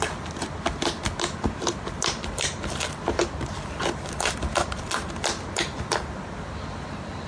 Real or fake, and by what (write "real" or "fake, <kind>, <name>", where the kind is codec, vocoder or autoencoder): real